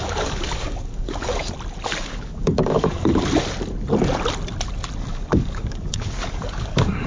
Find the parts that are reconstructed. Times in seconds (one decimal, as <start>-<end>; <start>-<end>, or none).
0.0-1.4; 2.0-3.1; 5.0-7.1